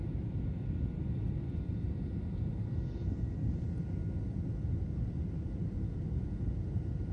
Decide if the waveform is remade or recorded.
recorded